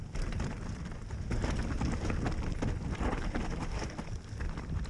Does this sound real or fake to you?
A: real